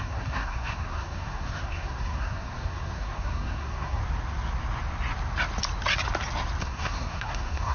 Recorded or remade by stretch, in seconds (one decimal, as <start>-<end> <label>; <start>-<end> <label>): 0.0-4.0 remade; 4.0-6.6 recorded; 6.6-7.7 remade